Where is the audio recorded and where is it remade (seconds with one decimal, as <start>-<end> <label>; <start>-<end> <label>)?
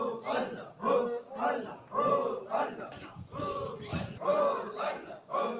0.0-0.4 remade; 0.4-2.9 recorded; 2.9-5.6 remade